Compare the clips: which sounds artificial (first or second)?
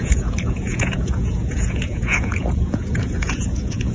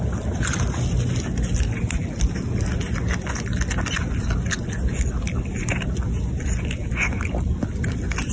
first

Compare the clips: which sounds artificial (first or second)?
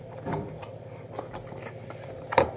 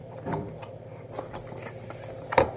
first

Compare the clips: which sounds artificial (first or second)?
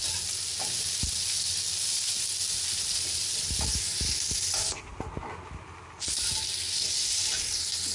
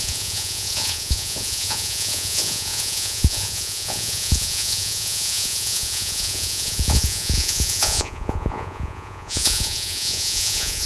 second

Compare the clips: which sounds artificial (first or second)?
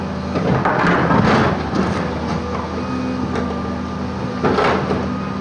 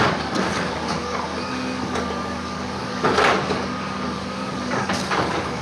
second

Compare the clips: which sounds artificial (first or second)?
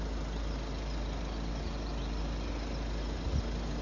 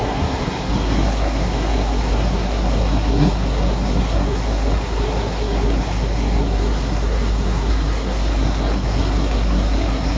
second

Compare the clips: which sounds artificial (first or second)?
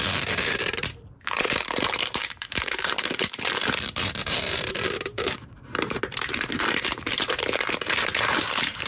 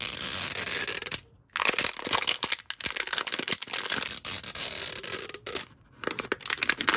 first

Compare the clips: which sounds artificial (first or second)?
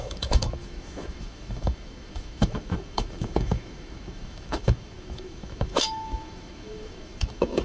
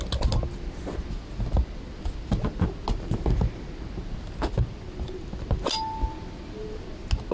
first